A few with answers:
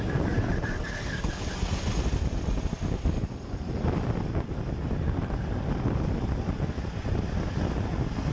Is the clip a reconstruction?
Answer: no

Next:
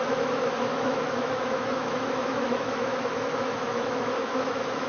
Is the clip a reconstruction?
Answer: yes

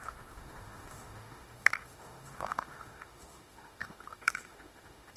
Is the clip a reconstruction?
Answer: yes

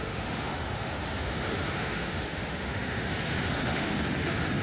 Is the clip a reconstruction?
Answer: yes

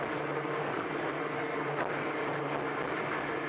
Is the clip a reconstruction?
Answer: no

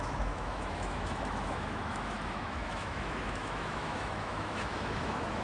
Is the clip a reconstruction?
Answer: yes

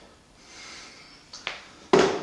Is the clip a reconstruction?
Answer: no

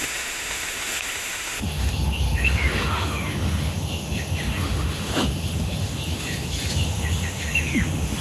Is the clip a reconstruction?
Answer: yes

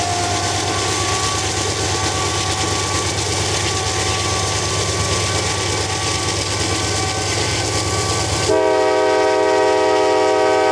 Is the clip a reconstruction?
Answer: no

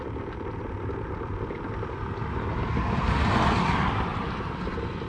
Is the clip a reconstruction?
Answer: no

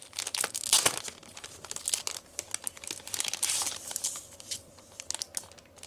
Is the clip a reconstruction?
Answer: no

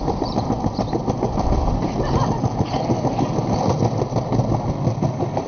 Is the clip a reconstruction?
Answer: no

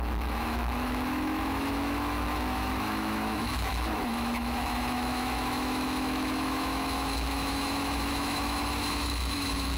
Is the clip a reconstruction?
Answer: yes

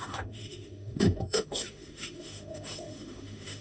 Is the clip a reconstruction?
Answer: yes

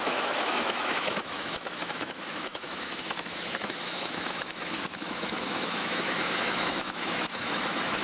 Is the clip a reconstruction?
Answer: yes